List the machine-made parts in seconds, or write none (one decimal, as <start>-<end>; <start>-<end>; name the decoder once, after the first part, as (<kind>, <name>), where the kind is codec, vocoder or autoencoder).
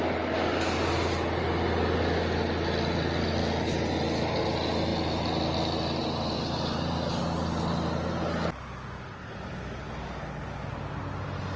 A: 6.0-7.2 (vocoder, BigVGAN v2)